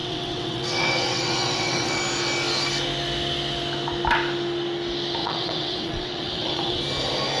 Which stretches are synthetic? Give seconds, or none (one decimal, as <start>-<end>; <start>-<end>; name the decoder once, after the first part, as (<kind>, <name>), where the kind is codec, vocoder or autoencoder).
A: 0.0-2.0 (vocoder, WaveNeXt); 5.2-6.8